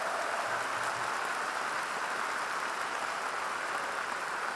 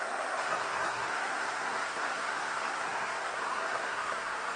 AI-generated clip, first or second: second